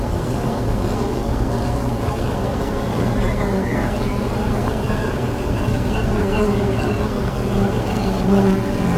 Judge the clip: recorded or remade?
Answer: remade